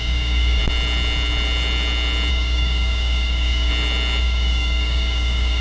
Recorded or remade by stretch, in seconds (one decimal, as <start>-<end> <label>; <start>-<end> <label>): 0.0-0.6 remade; 0.6-2.3 recorded; 2.3-3.7 remade; 3.7-4.2 recorded; 4.2-5.6 remade